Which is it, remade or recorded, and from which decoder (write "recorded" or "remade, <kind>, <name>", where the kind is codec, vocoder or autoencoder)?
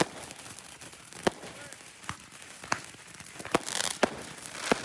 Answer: recorded